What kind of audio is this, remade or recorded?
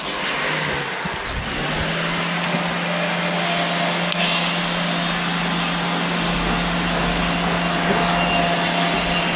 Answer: recorded